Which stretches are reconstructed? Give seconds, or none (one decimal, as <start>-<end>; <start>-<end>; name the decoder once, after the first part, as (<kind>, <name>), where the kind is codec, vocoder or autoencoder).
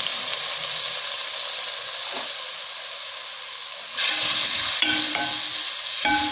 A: none